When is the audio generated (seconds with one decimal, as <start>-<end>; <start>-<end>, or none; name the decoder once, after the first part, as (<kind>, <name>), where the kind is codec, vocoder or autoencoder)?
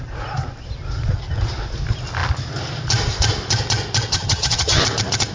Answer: 4.1-4.8 (vocoder, HiFi-GAN)